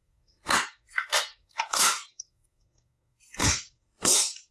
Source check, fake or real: fake